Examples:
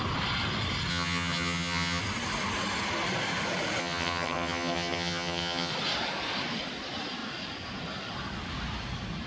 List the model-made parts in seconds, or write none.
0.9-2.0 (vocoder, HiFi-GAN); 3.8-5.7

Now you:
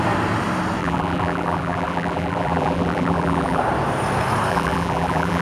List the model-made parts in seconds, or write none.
0.8-3.6 (vocoder, BigVGAN v2); 4.5-5.4

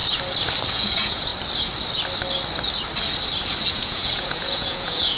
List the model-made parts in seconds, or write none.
0.7-1.3 (vocoder, Vocos); 3.7-5.2

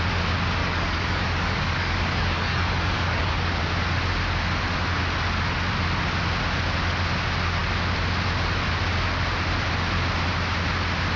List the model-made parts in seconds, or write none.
0.6-3.5 (codec, DAC)

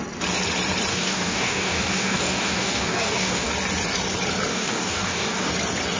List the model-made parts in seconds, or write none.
0.9-3.5 (codec, DAC); 4.5-5.5